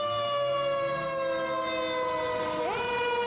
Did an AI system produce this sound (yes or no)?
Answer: no